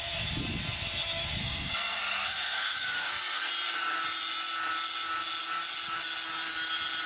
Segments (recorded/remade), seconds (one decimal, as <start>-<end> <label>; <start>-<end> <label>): 0.0-1.4 recorded; 1.4-3.5 remade; 3.5-7.1 recorded

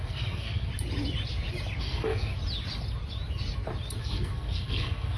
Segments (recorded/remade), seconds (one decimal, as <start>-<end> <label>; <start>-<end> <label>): 0.0-0.7 remade; 0.7-1.8 recorded; 1.8-2.3 remade; 2.3-4.0 recorded; 4.0-5.2 remade

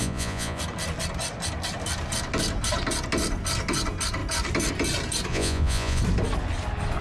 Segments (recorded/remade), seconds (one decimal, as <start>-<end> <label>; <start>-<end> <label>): 0.0-0.6 remade; 0.6-5.3 recorded; 5.3-6.0 remade; 6.0-7.0 recorded

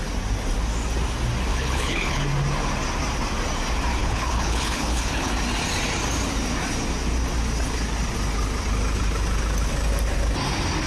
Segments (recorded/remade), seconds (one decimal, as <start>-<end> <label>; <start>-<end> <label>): 0.0-1.5 recorded; 1.5-2.2 remade; 2.2-4.0 recorded; 4.0-5.3 remade; 5.3-10.9 recorded